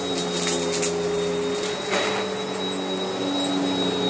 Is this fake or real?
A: real